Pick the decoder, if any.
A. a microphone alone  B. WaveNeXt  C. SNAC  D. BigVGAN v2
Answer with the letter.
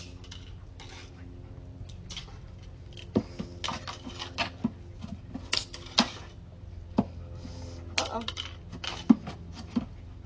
A